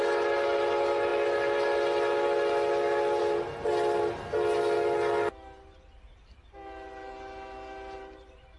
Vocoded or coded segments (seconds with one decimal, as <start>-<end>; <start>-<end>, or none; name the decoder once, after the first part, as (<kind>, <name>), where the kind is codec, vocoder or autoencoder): none